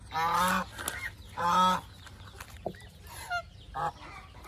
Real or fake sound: real